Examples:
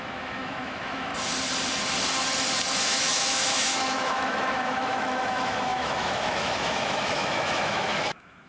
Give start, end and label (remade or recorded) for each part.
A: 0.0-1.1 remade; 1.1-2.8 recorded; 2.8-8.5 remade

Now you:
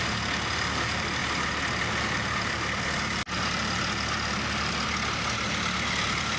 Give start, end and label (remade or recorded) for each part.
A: 0.0-6.4 recorded

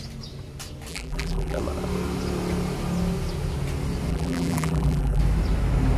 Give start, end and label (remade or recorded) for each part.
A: 0.0-0.9 recorded; 0.9-1.6 remade; 1.6-4.1 recorded; 4.1-5.2 remade; 5.2-6.0 recorded

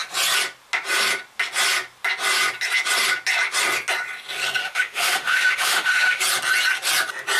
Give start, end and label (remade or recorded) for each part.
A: 0.0-4.6 recorded; 4.6-6.2 remade; 6.2-7.4 recorded

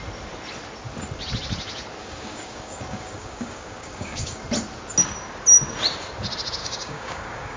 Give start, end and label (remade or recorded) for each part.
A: 0.0-2.0 recorded; 2.0-4.4 remade; 4.4-6.6 recorded; 6.6-7.6 remade

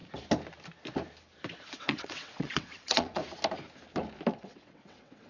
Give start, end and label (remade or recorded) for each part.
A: 0.0-1.7 recorded; 1.7-3.2 remade; 3.2-4.3 recorded; 4.3-5.3 remade

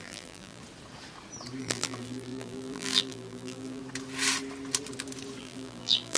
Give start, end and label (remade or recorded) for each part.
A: 0.0-0.6 remade; 0.6-1.6 recorded; 1.6-3.8 remade; 3.8-5.4 recorded; 5.4-6.2 remade

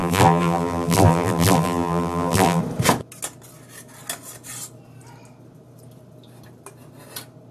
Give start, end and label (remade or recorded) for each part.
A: 0.0-2.6 remade; 2.6-7.5 recorded